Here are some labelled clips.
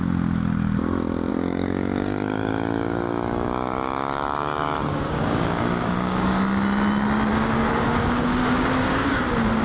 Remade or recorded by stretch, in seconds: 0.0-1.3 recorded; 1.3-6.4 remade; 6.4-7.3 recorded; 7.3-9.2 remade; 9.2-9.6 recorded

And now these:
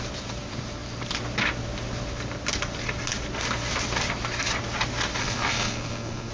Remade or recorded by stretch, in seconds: 0.0-5.2 recorded; 5.2-6.3 remade

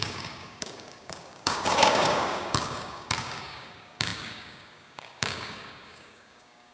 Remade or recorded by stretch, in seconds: 0.0-6.7 remade

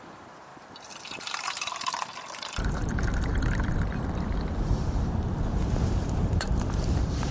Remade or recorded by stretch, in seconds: 0.0-0.5 remade; 0.5-1.0 recorded; 1.0-7.3 remade

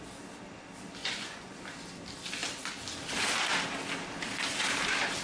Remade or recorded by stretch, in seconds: 0.0-1.0 recorded; 1.0-1.6 remade; 1.6-5.2 recorded

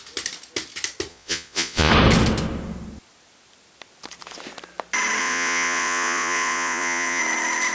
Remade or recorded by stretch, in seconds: 0.0-1.1 recorded; 1.1-1.9 remade; 1.9-5.2 recorded; 5.2-7.2 remade; 7.2-7.7 recorded

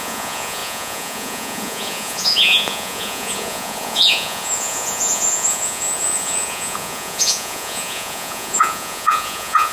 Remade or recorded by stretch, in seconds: 0.0-9.7 remade

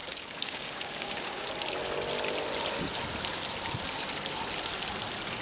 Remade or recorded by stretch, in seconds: 0.0-1.5 remade; 1.5-5.4 recorded